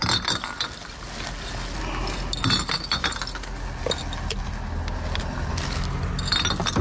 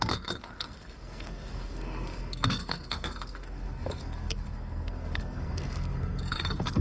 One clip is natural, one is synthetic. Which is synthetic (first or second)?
second